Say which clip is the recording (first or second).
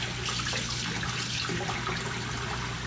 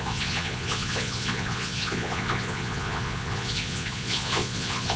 first